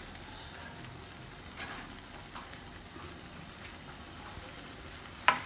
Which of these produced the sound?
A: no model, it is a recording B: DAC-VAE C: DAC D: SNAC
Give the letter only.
A